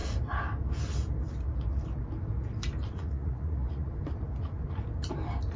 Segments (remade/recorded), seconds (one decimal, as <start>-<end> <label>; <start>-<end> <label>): 0.0-3.0 recorded; 3.0-3.9 remade; 3.9-5.6 recorded